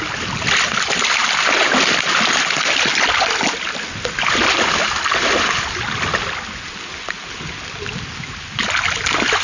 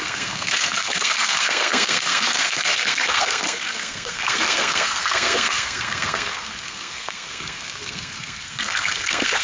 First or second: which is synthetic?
second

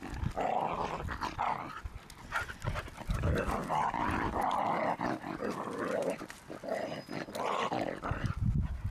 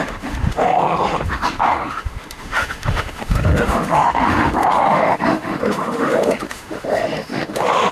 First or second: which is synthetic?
second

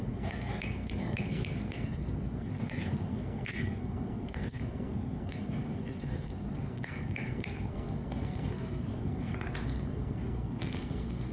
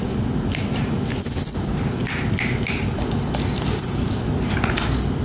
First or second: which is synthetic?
first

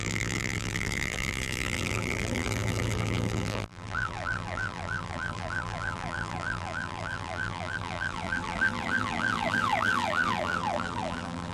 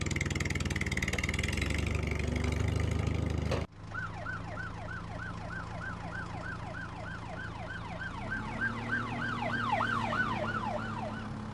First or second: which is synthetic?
first